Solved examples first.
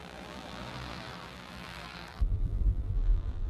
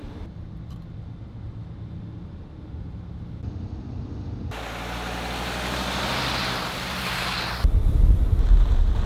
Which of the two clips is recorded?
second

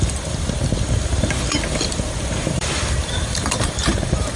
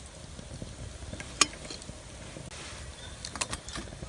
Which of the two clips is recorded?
second